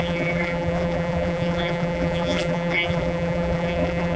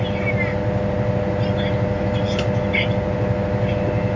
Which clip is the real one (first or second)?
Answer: second